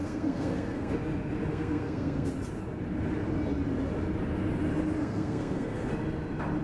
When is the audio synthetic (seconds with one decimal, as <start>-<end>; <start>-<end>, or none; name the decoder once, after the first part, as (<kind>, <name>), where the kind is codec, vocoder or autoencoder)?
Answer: 0.0-0.9 (codec, SNAC); 1.5-2.3; 5.0-5.9